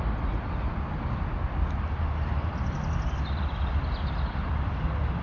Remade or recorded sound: recorded